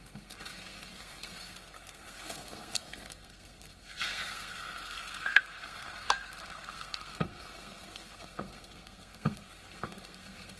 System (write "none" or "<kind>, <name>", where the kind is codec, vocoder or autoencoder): codec, SNAC